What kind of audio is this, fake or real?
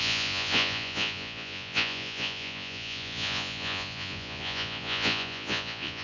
fake